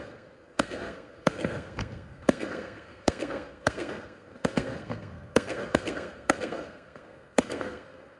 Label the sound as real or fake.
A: fake